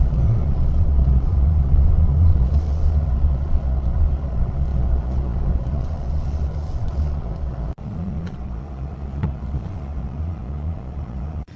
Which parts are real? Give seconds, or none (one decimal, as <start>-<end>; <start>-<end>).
none